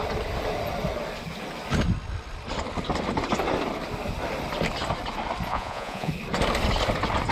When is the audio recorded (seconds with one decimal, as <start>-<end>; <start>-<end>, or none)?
0.0-5.5; 6.1-7.3